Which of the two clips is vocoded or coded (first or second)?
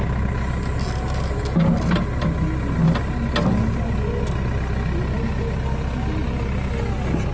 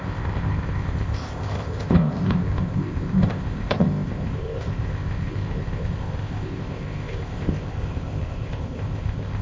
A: second